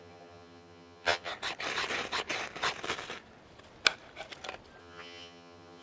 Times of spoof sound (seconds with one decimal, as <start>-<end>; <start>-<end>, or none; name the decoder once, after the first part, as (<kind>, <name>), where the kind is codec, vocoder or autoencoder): 0.0-1.3 (vocoder, HiFi-GAN); 4.8-5.8